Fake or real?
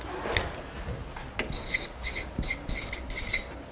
real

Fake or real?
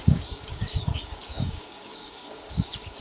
fake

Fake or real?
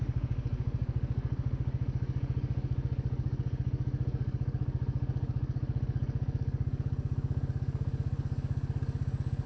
fake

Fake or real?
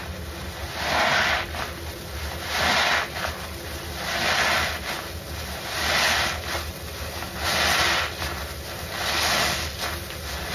real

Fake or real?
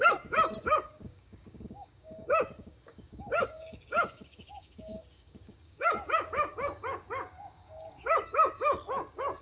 fake